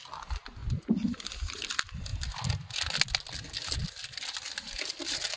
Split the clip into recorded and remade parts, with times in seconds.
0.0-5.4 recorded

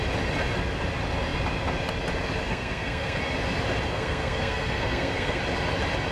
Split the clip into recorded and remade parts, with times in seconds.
0.0-2.5 recorded; 2.5-3.2 remade; 3.2-3.9 recorded; 3.9-5.4 remade; 5.4-6.1 recorded

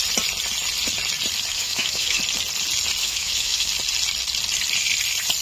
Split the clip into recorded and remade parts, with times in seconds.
0.0-1.5 recorded; 1.5-2.2 remade; 2.2-3.0 recorded; 3.0-3.7 remade; 3.7-5.4 recorded

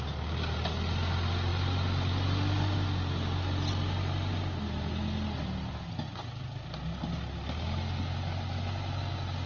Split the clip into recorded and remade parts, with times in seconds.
0.0-9.5 recorded

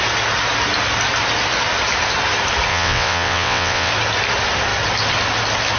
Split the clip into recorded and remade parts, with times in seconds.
0.0-2.7 recorded; 2.7-3.9 remade; 3.9-5.8 recorded

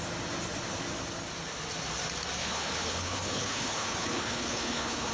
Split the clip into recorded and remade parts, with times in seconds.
0.0-2.4 recorded; 2.4-5.1 remade